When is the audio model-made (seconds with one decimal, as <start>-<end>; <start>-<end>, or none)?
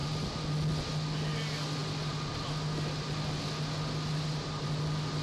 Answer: none